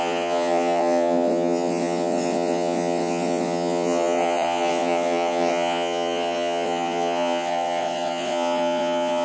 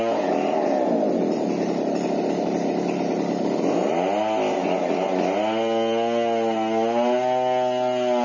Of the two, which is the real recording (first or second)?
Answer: second